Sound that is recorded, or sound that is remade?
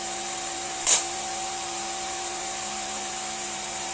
remade